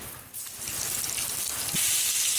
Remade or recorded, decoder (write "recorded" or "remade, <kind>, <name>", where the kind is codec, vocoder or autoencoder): recorded